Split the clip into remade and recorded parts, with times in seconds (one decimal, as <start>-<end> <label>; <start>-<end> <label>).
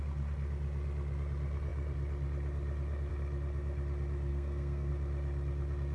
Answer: 0.0-4.3 recorded; 4.3-4.9 remade; 4.9-5.9 recorded